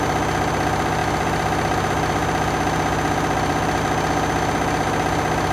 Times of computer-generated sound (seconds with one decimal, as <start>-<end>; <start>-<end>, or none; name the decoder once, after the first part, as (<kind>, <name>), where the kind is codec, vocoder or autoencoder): none